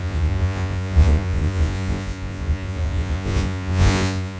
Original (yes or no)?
no